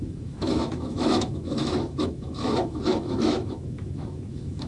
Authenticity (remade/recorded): remade